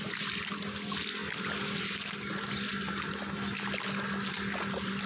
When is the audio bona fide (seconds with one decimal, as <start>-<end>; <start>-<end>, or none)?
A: 0.0-5.1